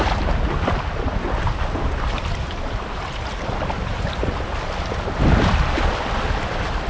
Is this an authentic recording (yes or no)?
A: no